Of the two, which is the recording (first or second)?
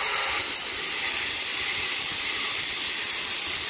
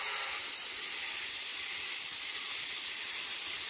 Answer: second